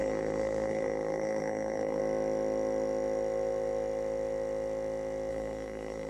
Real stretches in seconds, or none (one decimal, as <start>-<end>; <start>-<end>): 2.0-5.3